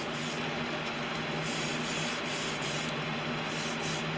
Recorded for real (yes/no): yes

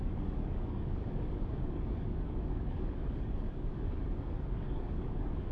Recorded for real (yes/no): no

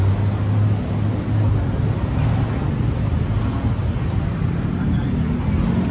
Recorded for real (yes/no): yes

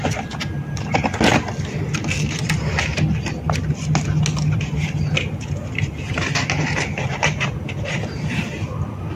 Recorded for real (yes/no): yes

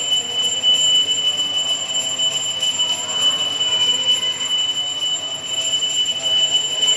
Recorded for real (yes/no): yes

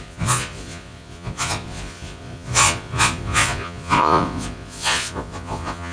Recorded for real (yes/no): no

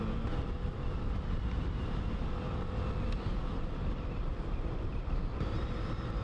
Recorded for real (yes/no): yes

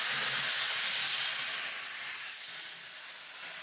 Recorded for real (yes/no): yes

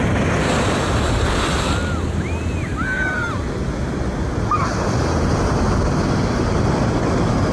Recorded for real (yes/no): yes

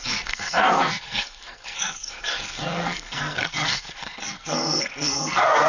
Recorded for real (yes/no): no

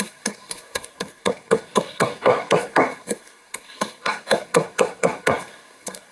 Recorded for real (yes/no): no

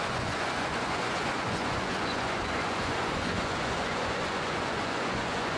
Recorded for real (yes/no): no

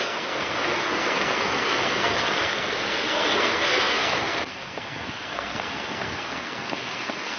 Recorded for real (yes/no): no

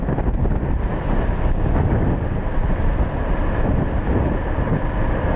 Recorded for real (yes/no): yes